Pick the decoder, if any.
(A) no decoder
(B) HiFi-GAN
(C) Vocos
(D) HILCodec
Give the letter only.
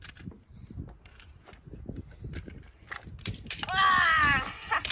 A